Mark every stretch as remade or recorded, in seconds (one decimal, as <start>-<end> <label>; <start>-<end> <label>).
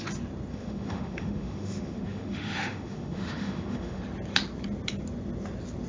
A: 0.0-0.5 recorded; 0.5-4.0 remade; 4.0-5.9 recorded